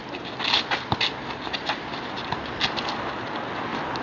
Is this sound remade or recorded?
recorded